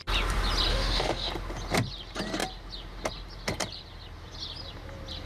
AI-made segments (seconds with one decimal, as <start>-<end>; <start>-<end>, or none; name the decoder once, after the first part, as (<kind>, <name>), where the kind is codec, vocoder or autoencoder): 0.7-1.3 (autoencoder, DAC-VAE)